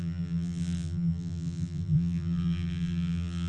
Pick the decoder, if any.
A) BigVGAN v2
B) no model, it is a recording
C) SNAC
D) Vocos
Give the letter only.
A